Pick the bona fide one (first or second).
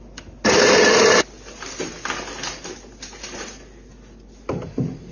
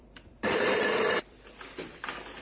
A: first